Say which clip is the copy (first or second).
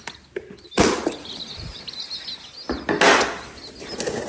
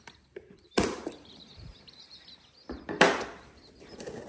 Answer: second